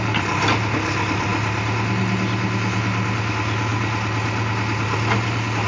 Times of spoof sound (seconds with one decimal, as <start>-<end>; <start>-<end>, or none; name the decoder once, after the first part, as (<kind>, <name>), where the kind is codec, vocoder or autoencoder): none